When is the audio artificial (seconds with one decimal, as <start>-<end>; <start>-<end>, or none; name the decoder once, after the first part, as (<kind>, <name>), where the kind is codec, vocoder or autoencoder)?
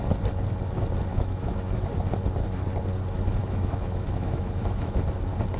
1.1-1.9 (autoencoder, DAC-VAE); 3.4-5.0